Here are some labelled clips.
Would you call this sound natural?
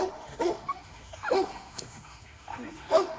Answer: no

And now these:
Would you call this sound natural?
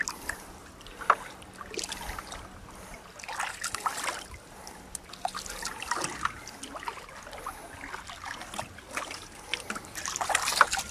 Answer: yes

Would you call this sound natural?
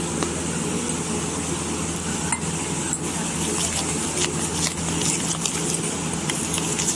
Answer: yes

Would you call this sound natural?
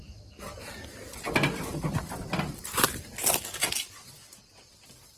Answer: yes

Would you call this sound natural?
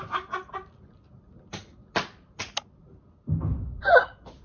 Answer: yes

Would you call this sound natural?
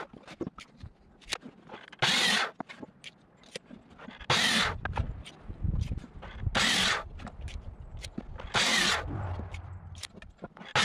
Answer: yes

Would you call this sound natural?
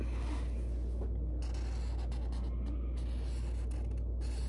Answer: yes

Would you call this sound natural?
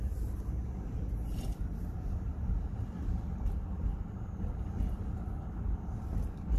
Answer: yes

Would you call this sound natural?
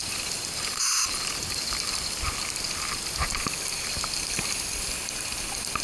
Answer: yes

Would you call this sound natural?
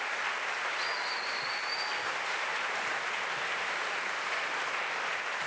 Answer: yes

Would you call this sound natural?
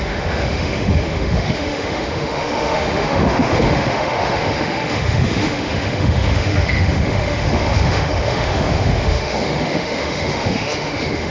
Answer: no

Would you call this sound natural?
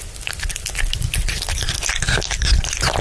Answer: yes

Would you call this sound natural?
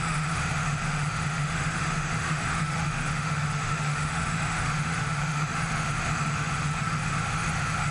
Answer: no